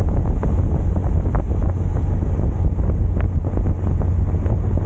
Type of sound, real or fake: real